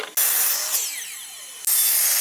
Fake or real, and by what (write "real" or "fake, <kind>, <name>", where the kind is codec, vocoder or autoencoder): real